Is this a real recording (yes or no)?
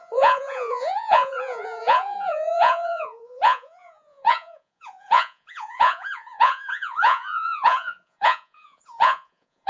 no